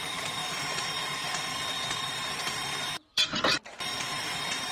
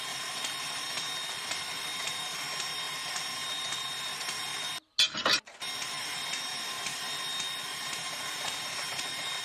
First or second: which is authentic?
second